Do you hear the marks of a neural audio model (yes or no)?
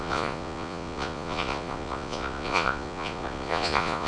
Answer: yes